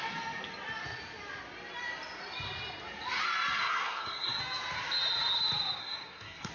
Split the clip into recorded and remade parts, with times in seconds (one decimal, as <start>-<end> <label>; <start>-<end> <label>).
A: 0.0-3.6 recorded; 3.6-4.4 remade; 4.4-5.8 recorded; 5.8-6.5 remade